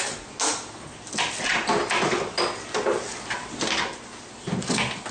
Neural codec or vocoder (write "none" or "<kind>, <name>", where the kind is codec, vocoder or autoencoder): none